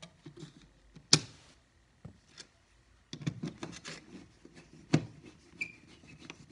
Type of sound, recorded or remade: recorded